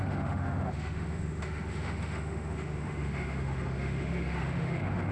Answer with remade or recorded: remade